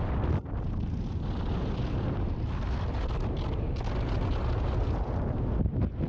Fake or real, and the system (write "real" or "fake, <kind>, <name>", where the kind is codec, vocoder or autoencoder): real